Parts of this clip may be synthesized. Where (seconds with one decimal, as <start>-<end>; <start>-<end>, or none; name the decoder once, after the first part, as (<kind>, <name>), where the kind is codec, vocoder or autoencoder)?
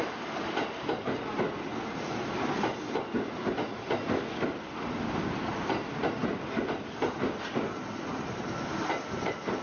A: none